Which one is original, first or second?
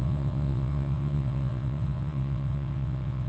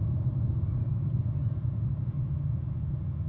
second